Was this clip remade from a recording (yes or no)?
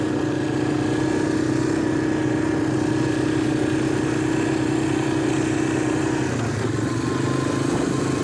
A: no